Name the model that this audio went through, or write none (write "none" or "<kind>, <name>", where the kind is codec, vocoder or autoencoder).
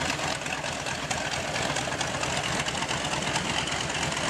none